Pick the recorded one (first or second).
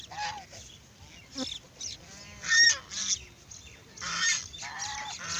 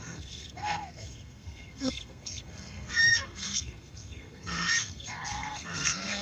first